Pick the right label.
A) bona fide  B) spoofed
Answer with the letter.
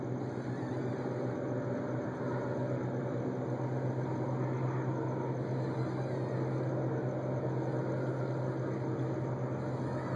A